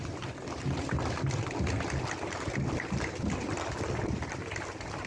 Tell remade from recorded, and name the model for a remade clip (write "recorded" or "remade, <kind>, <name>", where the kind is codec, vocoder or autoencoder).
recorded